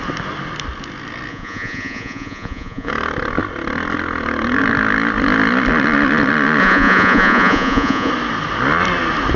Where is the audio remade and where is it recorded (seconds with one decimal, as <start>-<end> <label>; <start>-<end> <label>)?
0.0-1.3 recorded; 1.3-2.9 remade; 2.9-6.6 recorded; 6.6-8.1 remade; 8.1-9.4 recorded